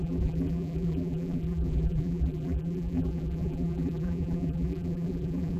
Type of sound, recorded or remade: remade